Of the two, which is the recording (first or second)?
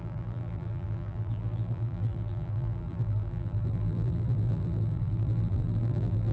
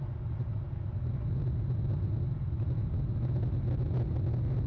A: second